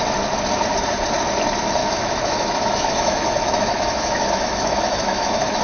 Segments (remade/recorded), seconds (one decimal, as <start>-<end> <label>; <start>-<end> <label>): 0.0-1.8 recorded; 1.8-5.6 remade